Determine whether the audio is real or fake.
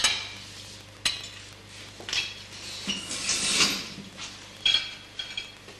real